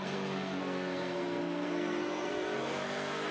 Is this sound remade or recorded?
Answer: remade